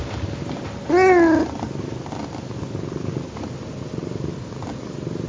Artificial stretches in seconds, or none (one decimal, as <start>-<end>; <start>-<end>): none